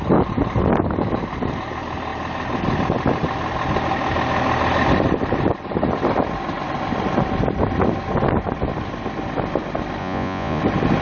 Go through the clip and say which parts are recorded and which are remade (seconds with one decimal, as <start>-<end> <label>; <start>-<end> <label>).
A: 0.0-10.0 recorded; 10.0-10.6 remade; 10.6-11.0 recorded